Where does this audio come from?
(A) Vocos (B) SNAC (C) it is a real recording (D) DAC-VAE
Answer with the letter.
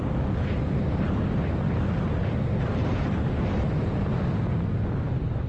C